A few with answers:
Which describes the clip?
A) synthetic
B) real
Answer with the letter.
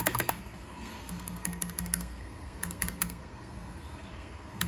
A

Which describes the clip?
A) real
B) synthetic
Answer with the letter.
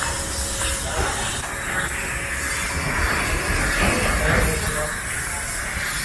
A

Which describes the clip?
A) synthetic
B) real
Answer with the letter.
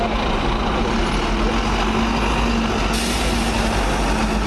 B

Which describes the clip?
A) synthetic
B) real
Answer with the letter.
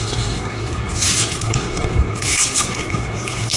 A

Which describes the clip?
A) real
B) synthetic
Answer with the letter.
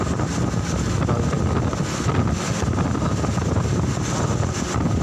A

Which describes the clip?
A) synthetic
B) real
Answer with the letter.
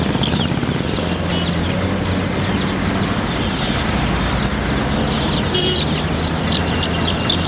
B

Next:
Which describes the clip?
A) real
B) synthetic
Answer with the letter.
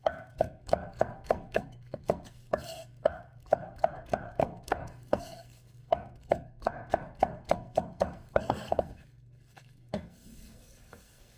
B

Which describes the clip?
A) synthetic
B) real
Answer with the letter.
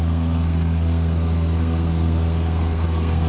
A